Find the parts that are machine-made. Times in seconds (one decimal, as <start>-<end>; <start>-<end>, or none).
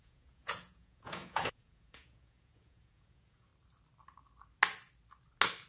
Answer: 0.0-3.5